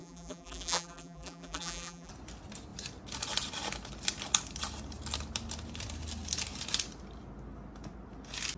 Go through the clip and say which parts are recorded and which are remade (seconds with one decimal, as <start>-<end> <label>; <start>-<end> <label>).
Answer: 0.0-2.1 remade; 2.1-8.6 recorded